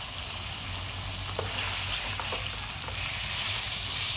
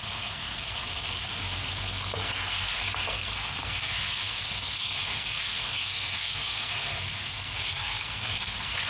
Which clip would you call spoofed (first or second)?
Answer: second